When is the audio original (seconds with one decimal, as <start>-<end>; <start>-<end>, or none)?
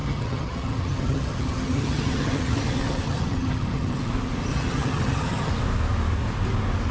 4.1-4.5; 5.5-6.9